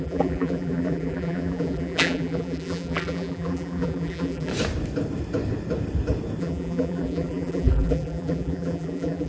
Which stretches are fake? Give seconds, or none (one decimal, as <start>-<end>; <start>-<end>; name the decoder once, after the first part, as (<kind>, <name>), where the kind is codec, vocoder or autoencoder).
0.0-4.5 (vocoder, BigVGAN v2); 6.4-9.3